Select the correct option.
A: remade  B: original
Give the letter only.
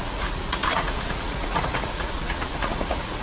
A